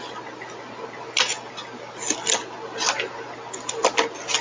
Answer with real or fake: real